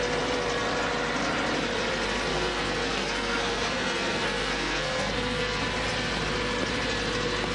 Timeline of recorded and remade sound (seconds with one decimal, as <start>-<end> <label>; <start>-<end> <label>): 0.0-2.3 recorded; 2.3-5.6 remade; 5.6-7.5 recorded